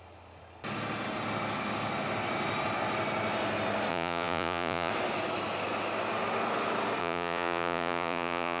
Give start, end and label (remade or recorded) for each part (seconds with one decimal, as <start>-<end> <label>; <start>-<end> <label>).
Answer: 0.0-3.9 recorded; 3.9-4.9 remade; 4.9-7.0 recorded; 7.0-8.6 remade